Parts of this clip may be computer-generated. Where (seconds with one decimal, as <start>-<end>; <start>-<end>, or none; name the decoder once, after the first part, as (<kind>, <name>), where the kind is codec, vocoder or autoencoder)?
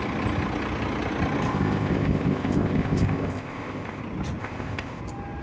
1.5-4.0 (codec, ZipCodec); 4.4-5.0